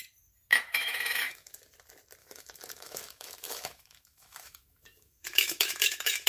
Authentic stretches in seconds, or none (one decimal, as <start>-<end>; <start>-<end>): 0.0-0.5; 1.5-2.2